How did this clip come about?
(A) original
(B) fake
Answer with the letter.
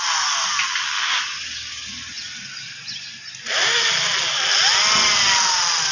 A